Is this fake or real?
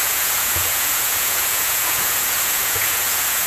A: fake